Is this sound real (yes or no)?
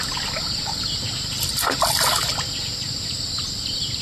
yes